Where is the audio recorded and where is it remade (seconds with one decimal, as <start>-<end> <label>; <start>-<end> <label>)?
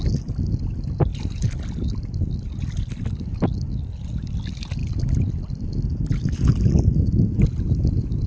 0.0-8.3 recorded